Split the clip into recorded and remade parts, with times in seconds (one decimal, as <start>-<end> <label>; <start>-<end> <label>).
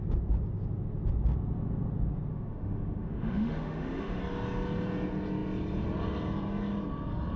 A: 0.0-2.3 recorded; 2.3-4.2 remade; 4.2-7.4 recorded